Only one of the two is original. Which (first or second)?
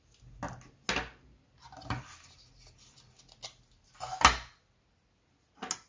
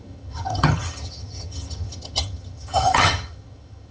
first